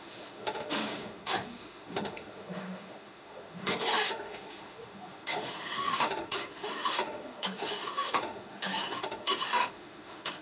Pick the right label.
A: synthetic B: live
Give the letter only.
A